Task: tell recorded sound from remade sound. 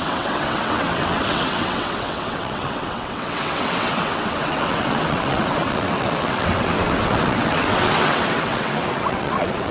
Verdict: remade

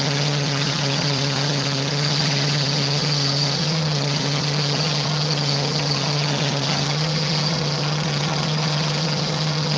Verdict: remade